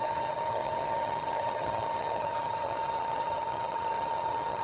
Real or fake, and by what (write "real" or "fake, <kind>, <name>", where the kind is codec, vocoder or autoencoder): fake, vocoder, HiFi-GAN